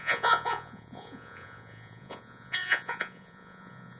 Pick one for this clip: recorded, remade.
remade